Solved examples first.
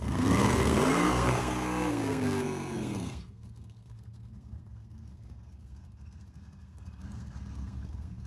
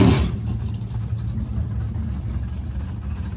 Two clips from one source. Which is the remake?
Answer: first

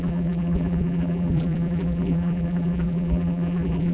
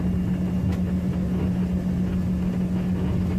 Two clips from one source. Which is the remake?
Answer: first